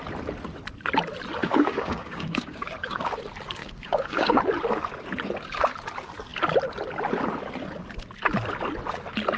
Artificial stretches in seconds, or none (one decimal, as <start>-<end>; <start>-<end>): 1.4-3.2; 3.6-4.4